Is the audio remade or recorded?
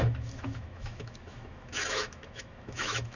remade